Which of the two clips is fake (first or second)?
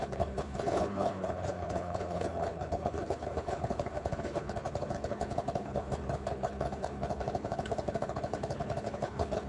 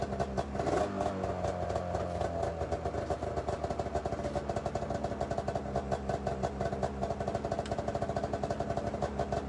first